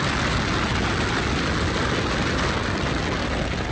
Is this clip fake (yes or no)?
no